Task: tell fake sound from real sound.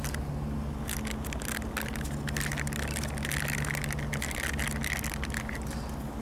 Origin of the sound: real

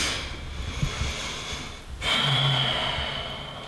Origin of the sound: real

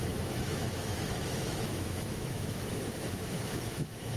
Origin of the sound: fake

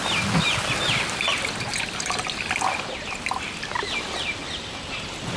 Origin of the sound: real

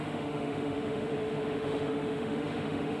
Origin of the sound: fake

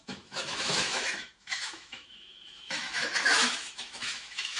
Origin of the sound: fake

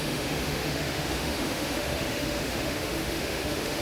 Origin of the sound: fake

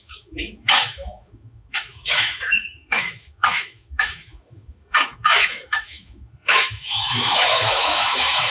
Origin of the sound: fake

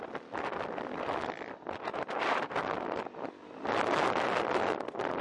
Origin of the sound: real